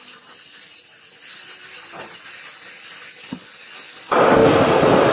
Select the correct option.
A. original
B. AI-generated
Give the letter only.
A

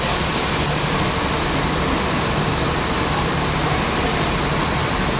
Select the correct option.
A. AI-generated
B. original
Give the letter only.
B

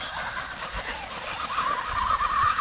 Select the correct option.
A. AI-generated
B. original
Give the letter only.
B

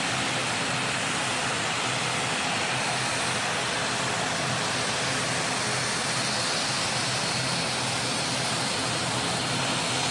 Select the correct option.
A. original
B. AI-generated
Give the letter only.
A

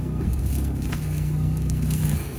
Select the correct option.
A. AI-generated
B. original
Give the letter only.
A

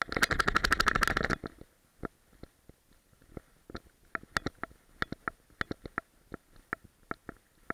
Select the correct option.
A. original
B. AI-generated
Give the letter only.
A